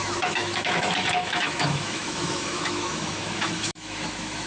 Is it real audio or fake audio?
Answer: fake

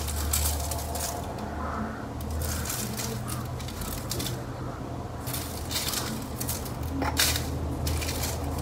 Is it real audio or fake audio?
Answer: real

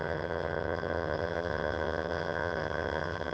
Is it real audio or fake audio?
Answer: fake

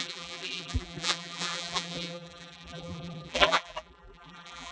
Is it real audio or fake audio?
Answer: fake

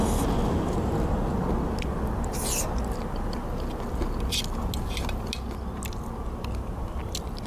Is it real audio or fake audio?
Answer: real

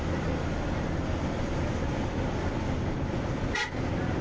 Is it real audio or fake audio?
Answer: real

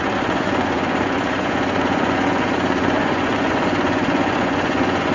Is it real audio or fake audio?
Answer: fake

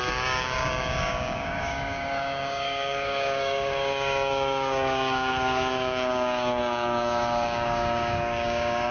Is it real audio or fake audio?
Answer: fake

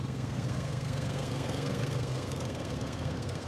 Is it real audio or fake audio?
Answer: fake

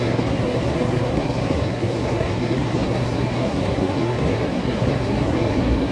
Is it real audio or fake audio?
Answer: fake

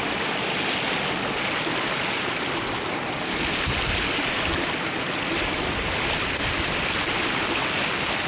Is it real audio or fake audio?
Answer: real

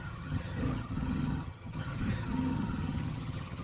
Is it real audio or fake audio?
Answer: fake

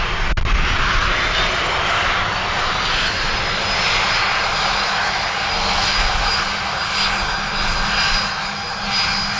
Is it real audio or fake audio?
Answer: real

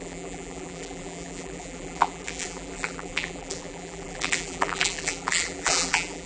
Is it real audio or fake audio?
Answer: fake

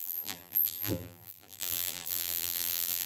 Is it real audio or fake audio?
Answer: fake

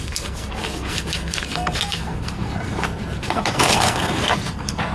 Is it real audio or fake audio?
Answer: fake